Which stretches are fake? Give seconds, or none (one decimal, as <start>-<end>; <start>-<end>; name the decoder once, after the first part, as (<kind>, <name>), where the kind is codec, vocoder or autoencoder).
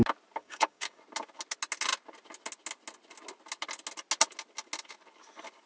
0.4-1.0 (codec, DAC)